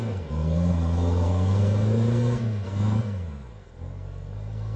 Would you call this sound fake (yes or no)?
yes